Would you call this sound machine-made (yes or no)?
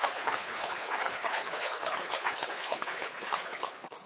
yes